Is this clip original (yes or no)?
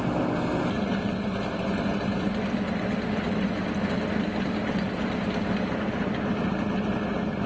yes